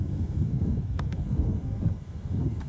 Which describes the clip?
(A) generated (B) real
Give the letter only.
A